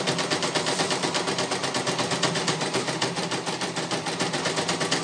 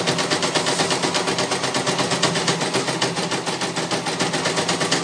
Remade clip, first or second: first